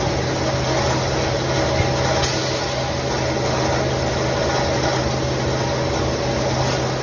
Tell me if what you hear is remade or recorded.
recorded